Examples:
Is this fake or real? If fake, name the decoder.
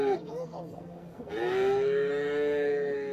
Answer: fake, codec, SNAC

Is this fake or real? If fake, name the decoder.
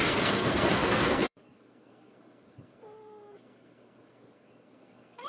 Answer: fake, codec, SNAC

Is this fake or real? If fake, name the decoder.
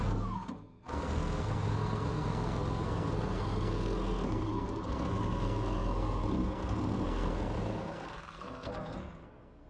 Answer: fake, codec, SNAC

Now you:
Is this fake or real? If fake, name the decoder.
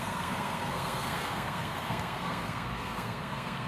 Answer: fake, codec, SNAC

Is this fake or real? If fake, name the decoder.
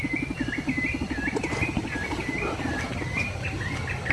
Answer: real